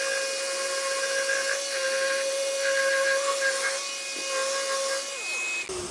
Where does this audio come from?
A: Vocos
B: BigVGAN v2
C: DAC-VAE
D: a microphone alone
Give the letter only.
D